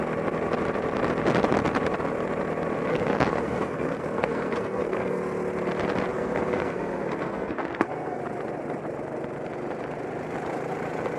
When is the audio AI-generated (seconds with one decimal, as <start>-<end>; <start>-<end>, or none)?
2.9-5.2; 6.1-8.2